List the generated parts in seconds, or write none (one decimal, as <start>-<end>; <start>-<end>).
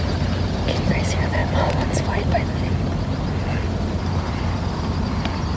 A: none